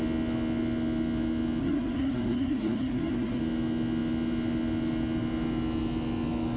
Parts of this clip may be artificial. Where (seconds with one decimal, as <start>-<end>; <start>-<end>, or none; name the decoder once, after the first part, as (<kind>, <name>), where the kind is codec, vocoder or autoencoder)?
1.6-3.4 (codec, SNAC)